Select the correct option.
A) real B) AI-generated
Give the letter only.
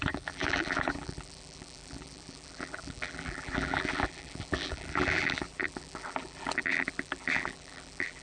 B